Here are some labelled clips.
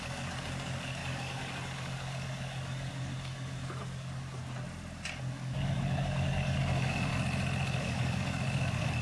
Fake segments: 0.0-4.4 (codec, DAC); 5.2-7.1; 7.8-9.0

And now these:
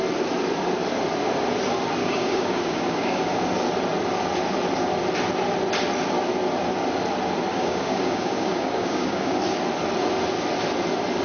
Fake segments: 2.0-3.5 (codec, DAC); 7.5-9.4

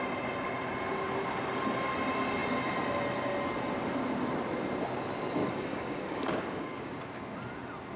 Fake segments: 5.4-6.9 (codec, DAC)